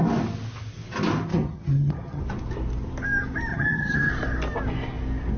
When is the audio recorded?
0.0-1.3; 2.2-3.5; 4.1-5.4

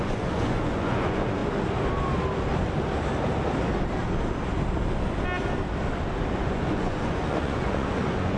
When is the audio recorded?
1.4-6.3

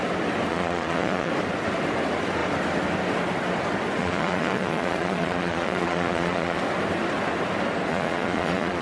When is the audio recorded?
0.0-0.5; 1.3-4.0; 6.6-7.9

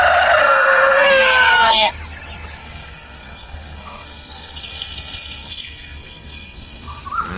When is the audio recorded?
0.0-0.4; 1.9-2.6; 7.0-7.4

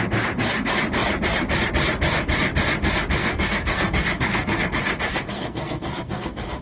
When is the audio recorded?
0.0-3.2; 4.6-5.1

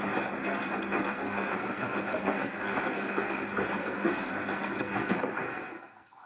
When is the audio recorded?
0.0-0.4; 3.4-3.8